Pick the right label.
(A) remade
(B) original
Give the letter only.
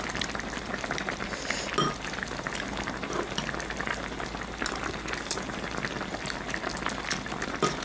B